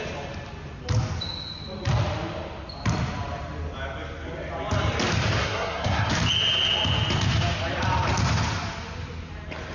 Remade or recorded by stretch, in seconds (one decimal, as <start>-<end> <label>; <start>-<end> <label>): 0.0-5.4 recorded; 5.4-6.1 remade; 6.1-9.7 recorded